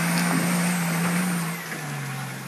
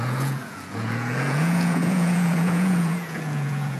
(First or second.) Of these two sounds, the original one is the first